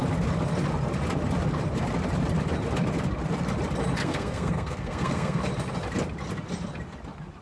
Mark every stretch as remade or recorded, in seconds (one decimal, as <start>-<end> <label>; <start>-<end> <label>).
0.0-4.0 recorded; 4.0-5.4 remade; 5.4-7.4 recorded